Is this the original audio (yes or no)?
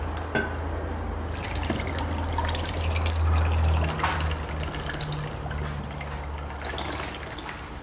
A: yes